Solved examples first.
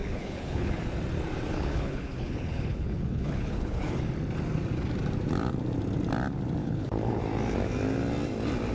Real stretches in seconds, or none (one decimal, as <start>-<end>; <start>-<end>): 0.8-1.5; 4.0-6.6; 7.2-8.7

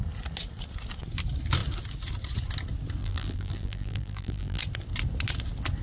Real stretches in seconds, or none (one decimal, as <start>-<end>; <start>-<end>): 0.0-3.0; 4.6-5.8

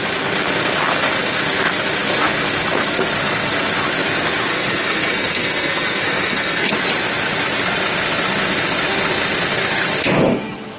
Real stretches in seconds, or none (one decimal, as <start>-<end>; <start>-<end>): 0.0-4.5; 6.7-10.8